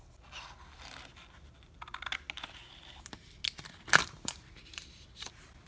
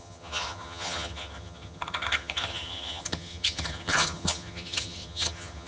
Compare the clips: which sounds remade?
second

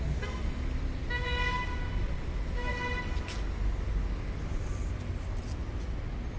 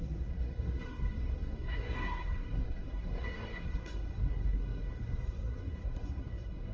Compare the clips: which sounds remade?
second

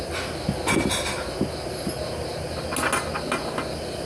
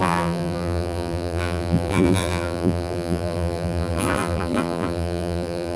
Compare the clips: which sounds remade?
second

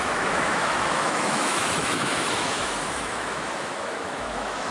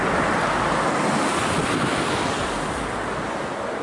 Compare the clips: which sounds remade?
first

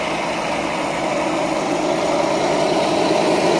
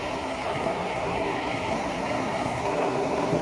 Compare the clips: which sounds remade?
second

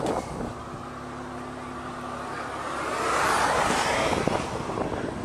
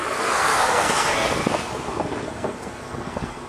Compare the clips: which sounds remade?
second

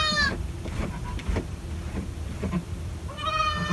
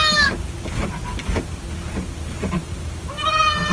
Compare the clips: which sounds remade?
first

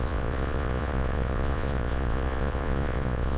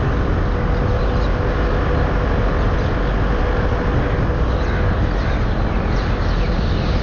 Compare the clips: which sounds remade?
first